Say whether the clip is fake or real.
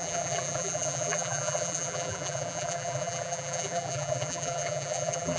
fake